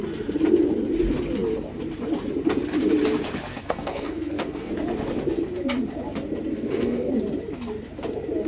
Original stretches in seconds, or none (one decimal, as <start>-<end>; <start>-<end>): 0.0-3.5; 4.7-6.5; 7.1-8.5